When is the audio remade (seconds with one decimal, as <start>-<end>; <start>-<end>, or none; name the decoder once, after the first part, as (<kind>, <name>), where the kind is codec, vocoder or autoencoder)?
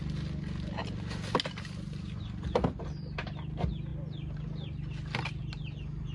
none